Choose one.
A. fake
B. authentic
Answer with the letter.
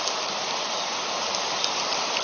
B